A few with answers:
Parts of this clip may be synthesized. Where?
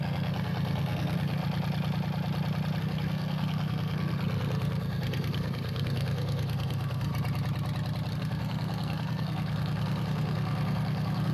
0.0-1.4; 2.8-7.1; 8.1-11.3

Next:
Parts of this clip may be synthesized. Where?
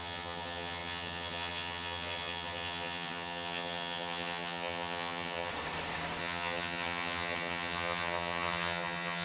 0.0-5.5; 6.2-9.2